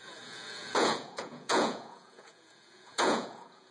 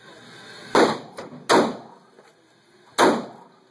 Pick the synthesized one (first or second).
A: first